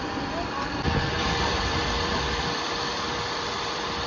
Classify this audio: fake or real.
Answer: fake